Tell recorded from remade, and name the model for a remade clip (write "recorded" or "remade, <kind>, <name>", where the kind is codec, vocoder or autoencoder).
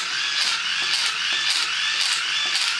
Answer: recorded